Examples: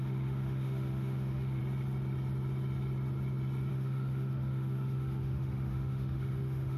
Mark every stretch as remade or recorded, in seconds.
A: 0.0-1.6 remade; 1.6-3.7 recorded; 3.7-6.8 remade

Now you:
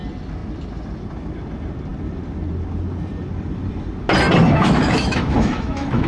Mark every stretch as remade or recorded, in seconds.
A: 0.0-4.4 recorded; 4.4-6.1 remade

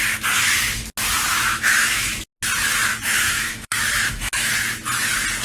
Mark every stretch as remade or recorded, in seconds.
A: 0.0-1.5 recorded; 1.5-2.2 remade; 2.2-2.9 recorded; 2.9-4.5 remade; 4.5-5.4 recorded

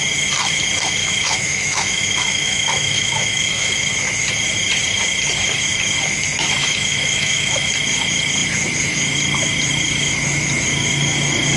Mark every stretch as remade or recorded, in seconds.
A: 0.0-1.0 recorded; 1.0-3.8 remade; 3.8-6.6 recorded; 6.6-7.7 remade; 7.7-11.6 recorded

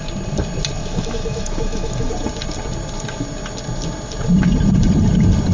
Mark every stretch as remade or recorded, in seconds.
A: 0.0-0.8 recorded; 0.8-2.1 remade; 2.1-5.5 recorded

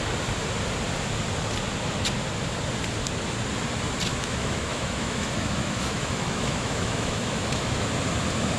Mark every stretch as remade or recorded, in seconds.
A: 0.0-4.1 recorded; 4.1-7.8 remade; 7.8-8.6 recorded

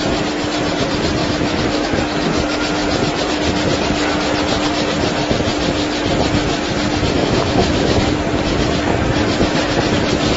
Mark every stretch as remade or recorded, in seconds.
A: 0.0-1.2 recorded; 1.2-2.0 remade; 2.0-7.2 recorded; 7.2-8.1 remade; 8.1-10.4 recorded